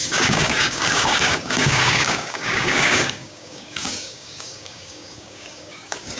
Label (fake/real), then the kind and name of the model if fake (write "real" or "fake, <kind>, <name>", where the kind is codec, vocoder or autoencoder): fake, codec, DAC